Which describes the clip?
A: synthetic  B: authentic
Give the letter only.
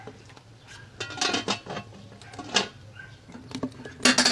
B